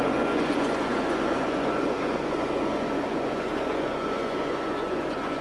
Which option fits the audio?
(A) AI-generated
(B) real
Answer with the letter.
A